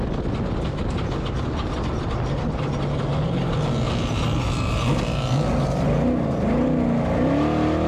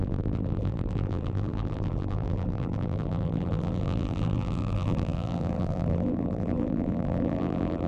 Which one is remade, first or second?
second